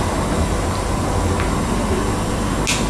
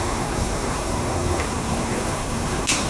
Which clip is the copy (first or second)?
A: second